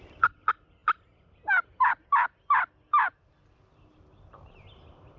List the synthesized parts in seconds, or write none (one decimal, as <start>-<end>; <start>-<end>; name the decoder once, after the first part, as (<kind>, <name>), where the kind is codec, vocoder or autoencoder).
none